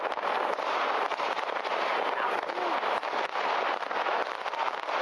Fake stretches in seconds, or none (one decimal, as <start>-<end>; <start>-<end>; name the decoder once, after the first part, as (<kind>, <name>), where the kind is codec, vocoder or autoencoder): none